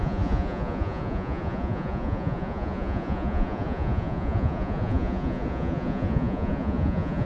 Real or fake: fake